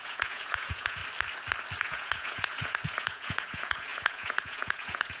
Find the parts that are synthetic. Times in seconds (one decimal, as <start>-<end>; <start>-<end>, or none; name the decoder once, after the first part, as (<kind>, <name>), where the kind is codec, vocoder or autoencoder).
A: 0.0-1.0 (vocoder, Vocos); 1.8-5.2